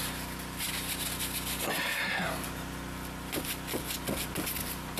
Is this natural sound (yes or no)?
yes